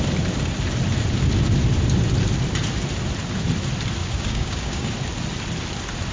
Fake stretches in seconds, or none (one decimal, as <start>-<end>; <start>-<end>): 4.0-4.9